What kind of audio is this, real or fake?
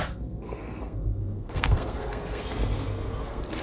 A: fake